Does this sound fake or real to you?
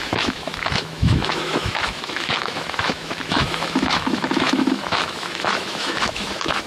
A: fake